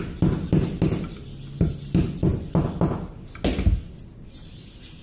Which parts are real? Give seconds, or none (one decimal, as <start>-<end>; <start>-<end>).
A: 0.0-5.0